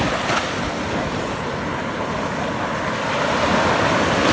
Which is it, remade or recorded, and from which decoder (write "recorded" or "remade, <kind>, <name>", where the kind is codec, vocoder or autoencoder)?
recorded